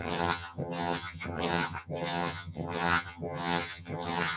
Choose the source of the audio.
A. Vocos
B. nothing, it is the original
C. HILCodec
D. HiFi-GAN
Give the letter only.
D